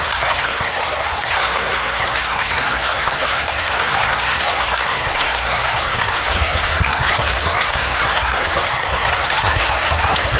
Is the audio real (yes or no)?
no